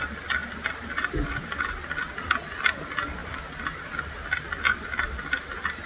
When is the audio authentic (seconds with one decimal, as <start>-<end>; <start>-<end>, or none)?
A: 0.0-0.4; 1.8-3.2; 3.9-5.9